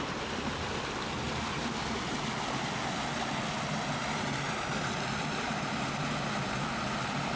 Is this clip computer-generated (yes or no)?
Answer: no